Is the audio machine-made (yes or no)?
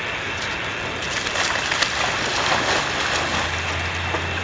no